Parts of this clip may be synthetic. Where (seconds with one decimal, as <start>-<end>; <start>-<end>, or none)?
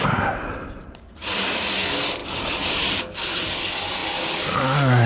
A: none